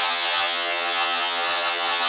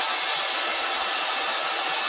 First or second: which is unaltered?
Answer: second